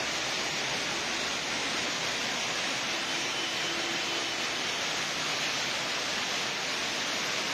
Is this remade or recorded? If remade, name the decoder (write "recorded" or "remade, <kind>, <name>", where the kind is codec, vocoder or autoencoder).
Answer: recorded